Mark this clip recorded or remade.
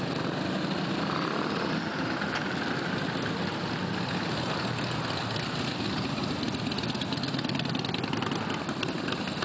recorded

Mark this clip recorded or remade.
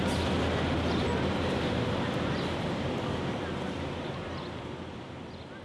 recorded